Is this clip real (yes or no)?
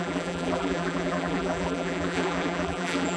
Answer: no